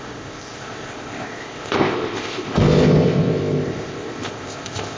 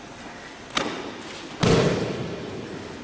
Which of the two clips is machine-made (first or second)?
first